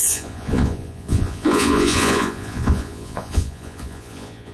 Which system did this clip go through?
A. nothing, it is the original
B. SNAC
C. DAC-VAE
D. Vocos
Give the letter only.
D